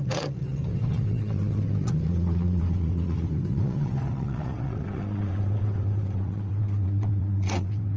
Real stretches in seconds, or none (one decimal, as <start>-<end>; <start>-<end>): none

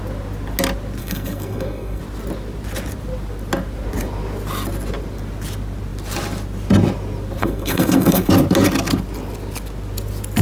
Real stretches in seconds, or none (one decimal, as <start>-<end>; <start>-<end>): 0.0-1.0; 2.0-7.4; 8.3-10.4

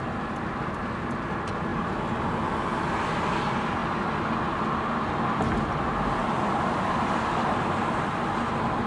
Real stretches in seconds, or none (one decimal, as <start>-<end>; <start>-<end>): 0.0-8.9

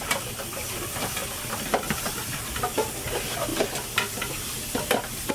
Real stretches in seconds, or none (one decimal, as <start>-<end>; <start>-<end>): 0.0-5.3

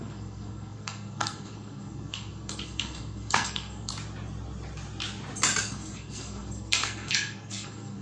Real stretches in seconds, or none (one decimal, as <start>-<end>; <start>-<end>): 3.9-5.6

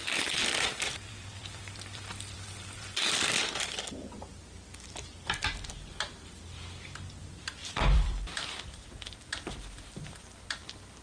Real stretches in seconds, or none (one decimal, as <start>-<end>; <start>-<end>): 3.1-7.6; 10.1-11.0